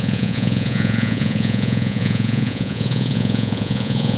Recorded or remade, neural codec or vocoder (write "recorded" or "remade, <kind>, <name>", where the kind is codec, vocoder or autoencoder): remade, vocoder, Vocos